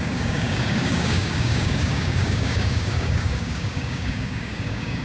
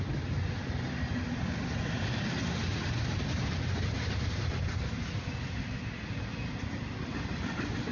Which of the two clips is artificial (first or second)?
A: first